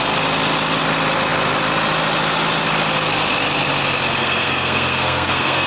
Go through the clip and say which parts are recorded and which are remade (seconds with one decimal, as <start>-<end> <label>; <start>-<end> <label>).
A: 0.0-4.2 recorded; 4.2-5.7 remade